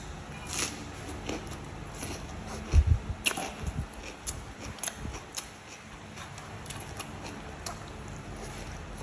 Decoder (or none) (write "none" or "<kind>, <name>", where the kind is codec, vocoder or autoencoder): none